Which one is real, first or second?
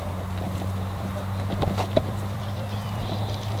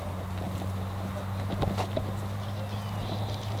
second